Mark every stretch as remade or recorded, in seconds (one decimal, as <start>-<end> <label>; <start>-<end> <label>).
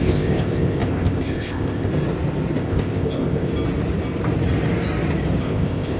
0.0-1.9 remade; 1.9-2.6 recorded; 2.6-3.5 remade; 3.5-5.4 recorded; 5.4-6.0 remade